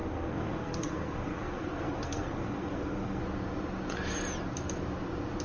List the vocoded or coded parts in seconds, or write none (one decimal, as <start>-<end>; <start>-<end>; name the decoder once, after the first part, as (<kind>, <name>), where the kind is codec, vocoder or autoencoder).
0.0-3.2 (codec, SNAC)